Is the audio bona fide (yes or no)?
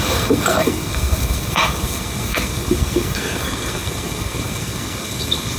no